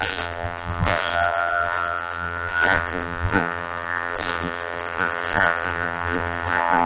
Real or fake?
fake